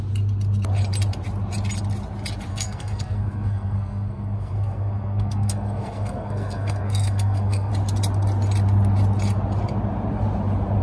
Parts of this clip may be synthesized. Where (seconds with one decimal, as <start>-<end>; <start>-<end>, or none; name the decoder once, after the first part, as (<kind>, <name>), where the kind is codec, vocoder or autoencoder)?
2.5-7.7 (codec, SNAC)